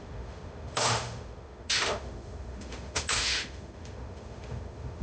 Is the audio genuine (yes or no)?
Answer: no